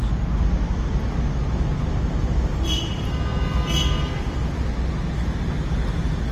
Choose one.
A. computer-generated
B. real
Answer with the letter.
B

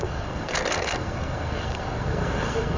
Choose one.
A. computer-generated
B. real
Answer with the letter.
A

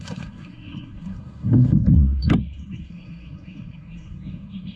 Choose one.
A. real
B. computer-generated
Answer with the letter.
B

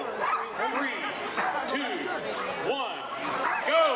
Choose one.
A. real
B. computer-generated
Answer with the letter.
A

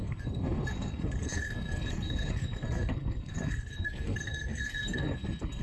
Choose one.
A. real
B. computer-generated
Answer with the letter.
B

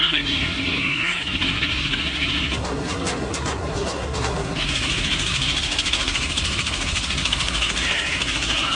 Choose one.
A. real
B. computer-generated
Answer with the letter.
B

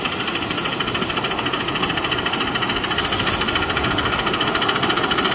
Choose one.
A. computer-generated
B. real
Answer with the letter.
B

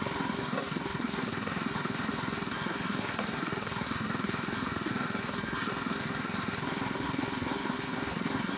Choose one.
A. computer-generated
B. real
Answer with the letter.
A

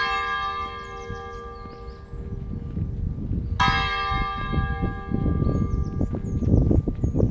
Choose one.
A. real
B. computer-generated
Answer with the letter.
A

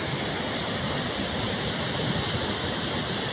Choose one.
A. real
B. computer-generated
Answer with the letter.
A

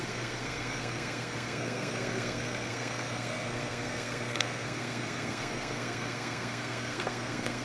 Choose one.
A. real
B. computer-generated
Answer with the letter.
B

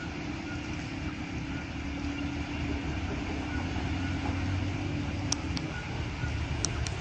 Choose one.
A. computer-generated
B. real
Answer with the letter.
B